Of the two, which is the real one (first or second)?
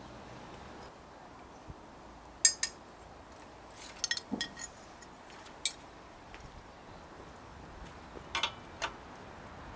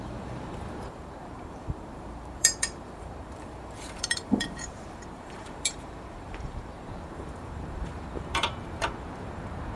first